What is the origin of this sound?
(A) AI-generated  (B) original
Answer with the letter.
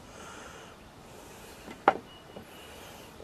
A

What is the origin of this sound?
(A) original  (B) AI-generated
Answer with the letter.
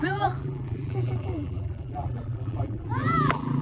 B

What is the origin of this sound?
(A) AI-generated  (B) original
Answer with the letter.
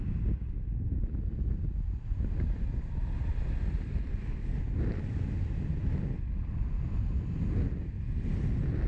B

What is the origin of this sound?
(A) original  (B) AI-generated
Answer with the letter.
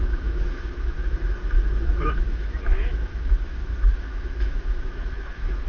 B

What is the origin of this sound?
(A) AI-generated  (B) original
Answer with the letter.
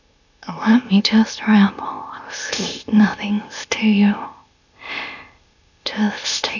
A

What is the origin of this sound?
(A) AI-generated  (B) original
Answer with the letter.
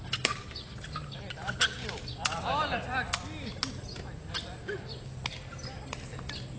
B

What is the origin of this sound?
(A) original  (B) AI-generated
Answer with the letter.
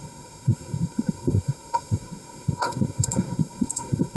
B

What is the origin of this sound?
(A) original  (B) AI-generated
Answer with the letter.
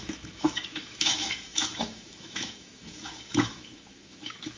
B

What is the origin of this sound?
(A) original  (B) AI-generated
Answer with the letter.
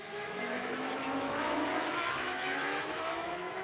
B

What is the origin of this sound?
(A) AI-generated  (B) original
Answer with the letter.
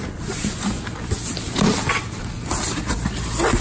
B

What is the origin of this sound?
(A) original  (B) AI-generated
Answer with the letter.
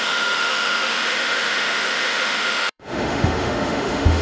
B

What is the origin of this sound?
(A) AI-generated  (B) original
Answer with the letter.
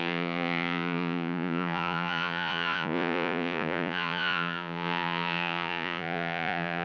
A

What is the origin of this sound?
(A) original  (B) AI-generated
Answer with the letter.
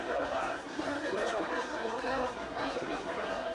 B